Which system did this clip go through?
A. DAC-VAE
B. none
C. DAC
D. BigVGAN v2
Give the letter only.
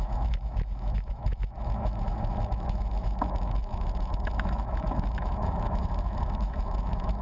A